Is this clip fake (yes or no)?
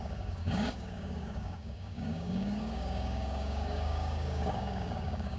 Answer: yes